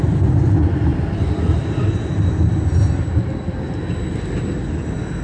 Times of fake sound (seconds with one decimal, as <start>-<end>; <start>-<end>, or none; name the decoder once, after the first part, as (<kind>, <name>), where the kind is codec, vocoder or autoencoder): none